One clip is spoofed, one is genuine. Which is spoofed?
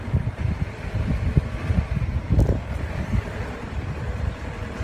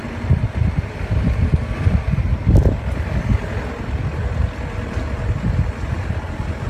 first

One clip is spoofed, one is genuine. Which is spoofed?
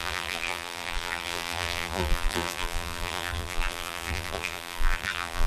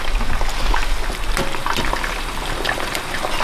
first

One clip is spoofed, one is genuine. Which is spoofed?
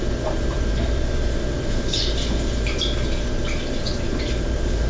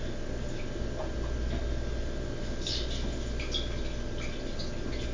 first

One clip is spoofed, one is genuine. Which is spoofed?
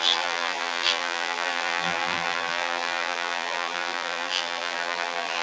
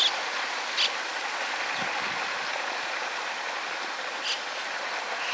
first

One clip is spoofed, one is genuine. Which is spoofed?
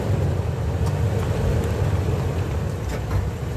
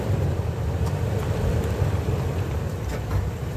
second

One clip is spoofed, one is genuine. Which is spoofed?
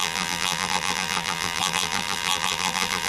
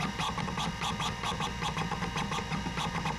first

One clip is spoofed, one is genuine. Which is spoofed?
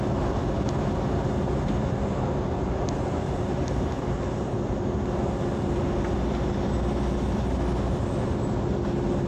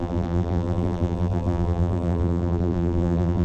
second